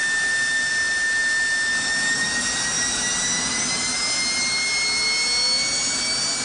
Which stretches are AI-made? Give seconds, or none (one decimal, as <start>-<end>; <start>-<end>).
none